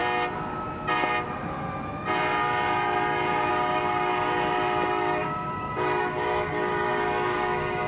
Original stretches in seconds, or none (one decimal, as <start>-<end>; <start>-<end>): 0.0-3.5; 4.1-4.9